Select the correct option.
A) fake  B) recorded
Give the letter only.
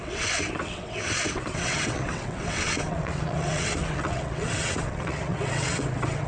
A